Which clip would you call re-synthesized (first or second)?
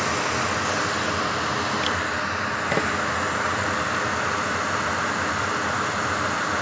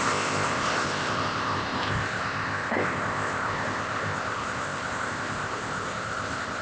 second